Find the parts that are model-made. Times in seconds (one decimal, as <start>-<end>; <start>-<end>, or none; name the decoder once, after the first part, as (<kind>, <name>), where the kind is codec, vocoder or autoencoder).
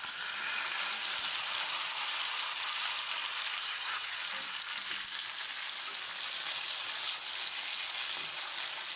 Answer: 3.6-4.2 (vocoder, HiFi-GAN)